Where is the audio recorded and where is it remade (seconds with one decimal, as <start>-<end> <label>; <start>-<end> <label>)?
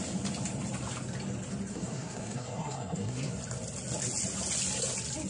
0.0-1.7 recorded; 1.7-3.3 remade; 3.3-5.3 recorded